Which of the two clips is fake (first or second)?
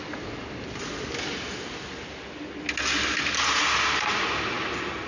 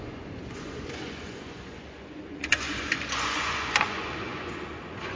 second